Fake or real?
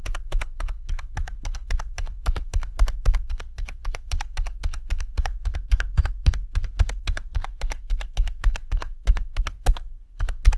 fake